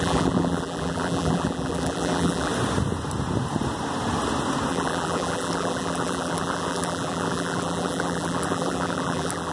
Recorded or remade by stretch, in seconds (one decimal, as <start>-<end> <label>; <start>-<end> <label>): 0.0-2.5 remade; 2.5-4.7 recorded; 4.7-9.5 remade

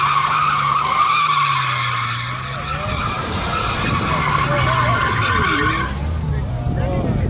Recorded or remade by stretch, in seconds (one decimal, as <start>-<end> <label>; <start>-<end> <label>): 0.0-7.3 recorded